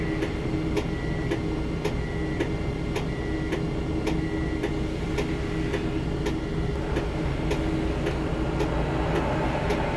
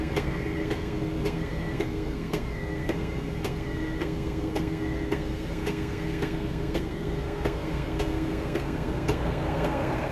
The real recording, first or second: first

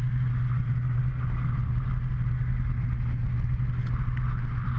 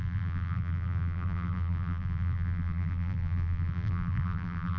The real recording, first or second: first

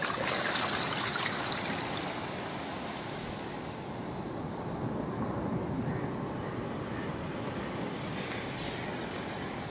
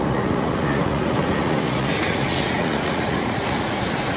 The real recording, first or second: first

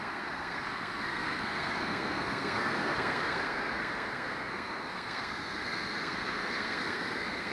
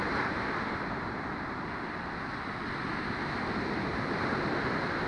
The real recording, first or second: second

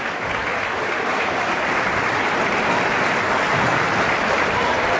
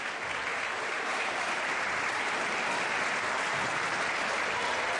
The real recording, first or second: second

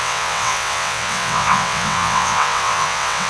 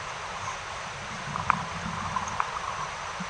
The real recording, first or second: second